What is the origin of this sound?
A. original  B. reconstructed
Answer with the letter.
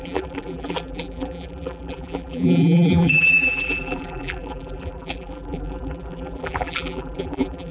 B